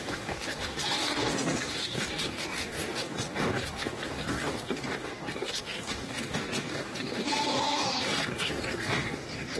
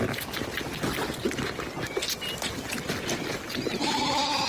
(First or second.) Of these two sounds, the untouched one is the second